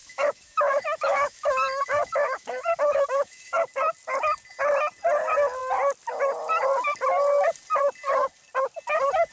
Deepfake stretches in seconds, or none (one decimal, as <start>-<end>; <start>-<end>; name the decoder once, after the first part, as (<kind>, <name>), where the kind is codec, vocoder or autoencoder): 0.0-3.7 (autoencoder, DAC-VAE)